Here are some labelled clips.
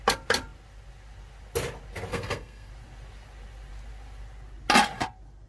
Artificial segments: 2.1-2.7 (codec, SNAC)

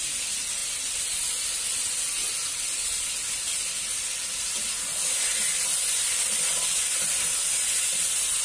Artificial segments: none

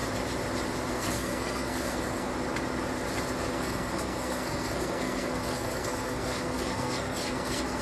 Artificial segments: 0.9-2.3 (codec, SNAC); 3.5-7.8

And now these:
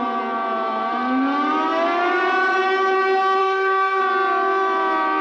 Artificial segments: 3.4-4.0 (codec, SNAC)

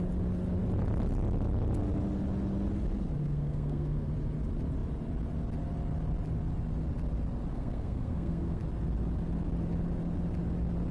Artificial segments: 3.2-4.1 (codec, SNAC); 7.5-8.6